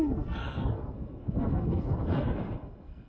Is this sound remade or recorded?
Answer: remade